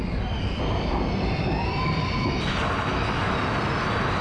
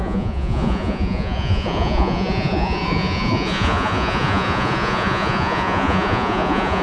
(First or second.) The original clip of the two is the first